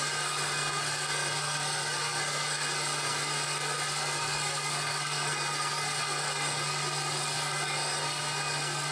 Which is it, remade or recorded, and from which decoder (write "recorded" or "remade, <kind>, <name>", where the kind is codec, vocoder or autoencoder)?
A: remade, codec, SNAC